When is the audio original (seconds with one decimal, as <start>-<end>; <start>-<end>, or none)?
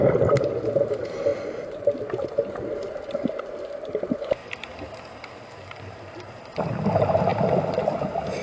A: 1.3-2.3; 4.4-5.8; 7.3-8.4